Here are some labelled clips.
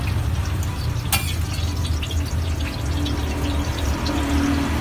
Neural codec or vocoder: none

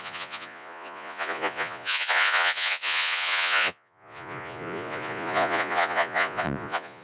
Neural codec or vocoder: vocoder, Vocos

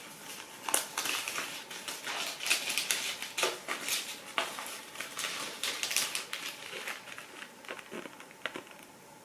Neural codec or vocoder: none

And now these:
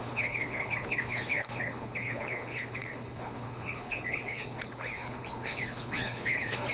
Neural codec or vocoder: codec, HILCodec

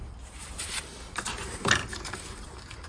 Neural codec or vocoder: none